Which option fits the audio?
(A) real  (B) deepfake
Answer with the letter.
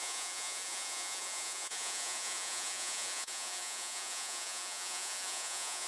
B